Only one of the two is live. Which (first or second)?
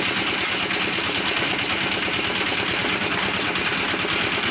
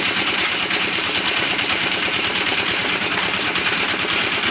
first